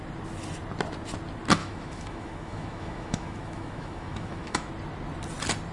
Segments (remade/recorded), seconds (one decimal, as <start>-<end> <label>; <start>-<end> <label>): 0.0-1.6 recorded; 1.6-4.7 remade; 4.7-5.7 recorded